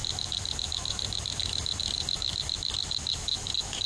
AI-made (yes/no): yes